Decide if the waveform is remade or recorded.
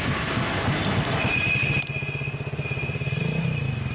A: recorded